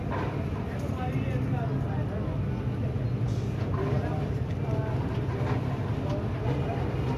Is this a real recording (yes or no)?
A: yes